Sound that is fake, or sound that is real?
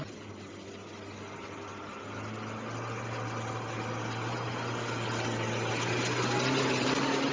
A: real